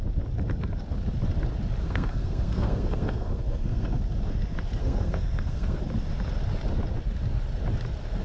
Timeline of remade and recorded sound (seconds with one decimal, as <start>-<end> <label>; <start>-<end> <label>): 0.0-1.8 recorded; 1.8-4.0 remade; 4.0-4.8 recorded; 4.8-5.8 remade; 5.8-8.2 recorded